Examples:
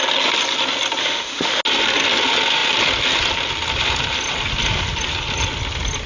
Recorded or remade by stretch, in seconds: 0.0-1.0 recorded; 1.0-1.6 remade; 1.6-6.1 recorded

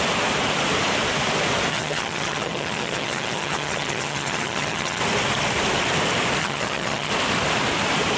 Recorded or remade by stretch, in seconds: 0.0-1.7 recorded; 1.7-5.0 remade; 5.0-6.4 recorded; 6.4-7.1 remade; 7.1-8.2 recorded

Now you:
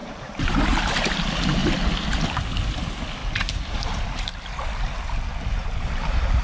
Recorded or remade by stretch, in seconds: 0.0-1.1 remade; 1.1-3.2 recorded; 3.2-4.3 remade; 4.3-5.6 recorded; 5.6-6.4 remade

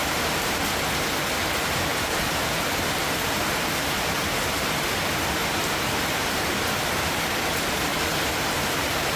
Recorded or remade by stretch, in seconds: 0.0-0.6 remade; 0.6-1.9 recorded; 1.9-4.4 remade; 4.4-5.4 recorded; 5.4-7.3 remade; 7.3-7.9 recorded; 7.9-9.2 remade

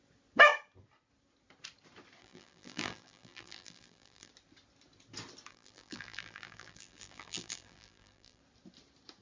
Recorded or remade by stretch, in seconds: 0.0-2.2 recorded; 2.2-4.3 remade; 4.3-5.5 recorded; 5.5-8.4 remade; 8.4-9.2 recorded

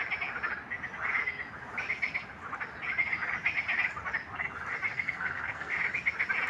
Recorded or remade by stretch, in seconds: 0.0-4.9 recorded; 4.9-5.8 remade; 5.8-6.5 recorded

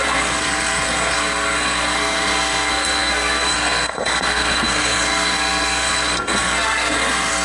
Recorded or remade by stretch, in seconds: 0.0-7.4 remade